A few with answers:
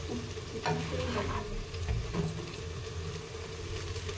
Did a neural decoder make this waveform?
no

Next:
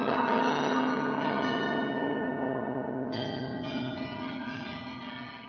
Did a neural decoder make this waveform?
yes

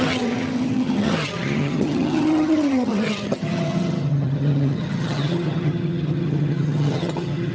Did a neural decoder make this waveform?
yes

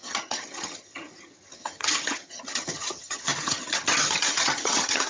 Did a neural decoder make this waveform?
yes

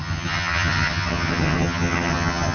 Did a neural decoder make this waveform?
yes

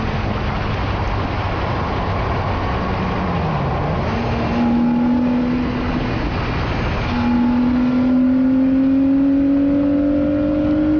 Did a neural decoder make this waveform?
no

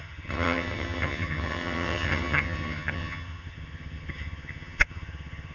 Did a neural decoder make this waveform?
yes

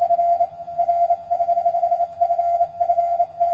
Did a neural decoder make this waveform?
yes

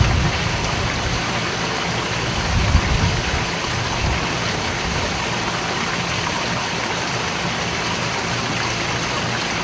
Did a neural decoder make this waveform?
no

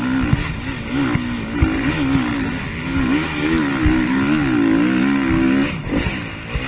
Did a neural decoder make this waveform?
no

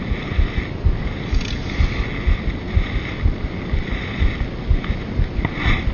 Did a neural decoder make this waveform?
no